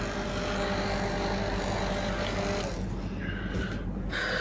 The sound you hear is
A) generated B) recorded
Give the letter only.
B